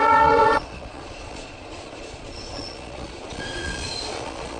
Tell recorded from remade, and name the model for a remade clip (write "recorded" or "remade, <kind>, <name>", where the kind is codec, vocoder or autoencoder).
remade, vocoder, Vocos